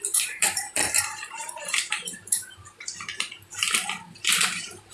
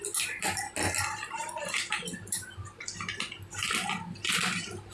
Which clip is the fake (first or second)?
first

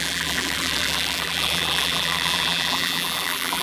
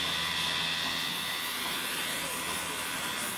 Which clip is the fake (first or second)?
first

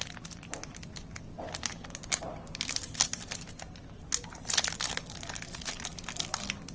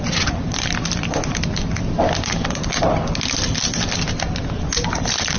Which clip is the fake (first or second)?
second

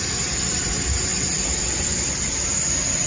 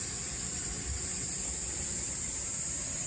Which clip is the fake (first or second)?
second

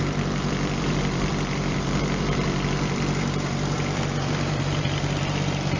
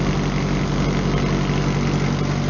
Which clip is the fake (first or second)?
first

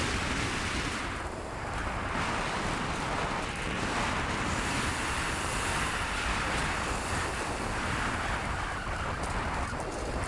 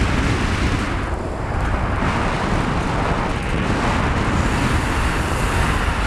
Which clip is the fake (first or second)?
first